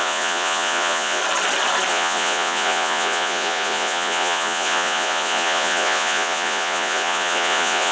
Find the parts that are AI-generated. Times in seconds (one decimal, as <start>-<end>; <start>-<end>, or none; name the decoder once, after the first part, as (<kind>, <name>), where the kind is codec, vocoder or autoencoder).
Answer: 0.0-1.2 (vocoder, Vocos); 1.9-7.9